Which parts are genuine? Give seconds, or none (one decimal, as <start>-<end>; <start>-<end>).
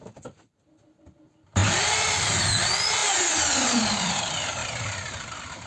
0.0-4.6